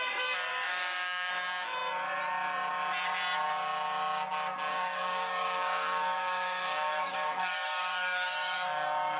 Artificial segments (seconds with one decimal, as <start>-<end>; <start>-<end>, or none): 0.5-1.3; 4.7-9.2